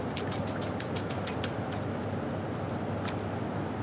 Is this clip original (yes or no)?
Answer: yes